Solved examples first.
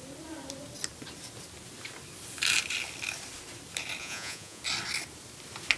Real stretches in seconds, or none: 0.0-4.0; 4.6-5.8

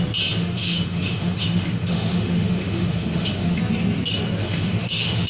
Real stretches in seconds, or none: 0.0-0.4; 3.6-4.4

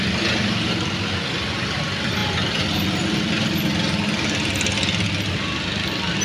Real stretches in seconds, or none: 0.0-6.2